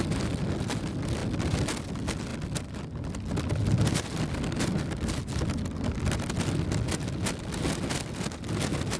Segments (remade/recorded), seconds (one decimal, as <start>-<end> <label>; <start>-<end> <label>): 0.0-9.0 recorded